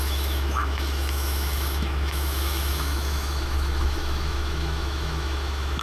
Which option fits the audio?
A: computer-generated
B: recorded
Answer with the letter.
A